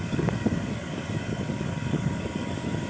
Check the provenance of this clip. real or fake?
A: fake